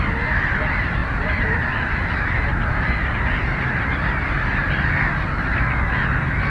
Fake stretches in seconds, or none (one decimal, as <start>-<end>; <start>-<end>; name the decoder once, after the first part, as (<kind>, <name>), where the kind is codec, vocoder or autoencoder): 1.0-4.9 (vocoder, BigVGAN v2)